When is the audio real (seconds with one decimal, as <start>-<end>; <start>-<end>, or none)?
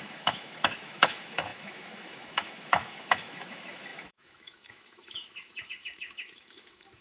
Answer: none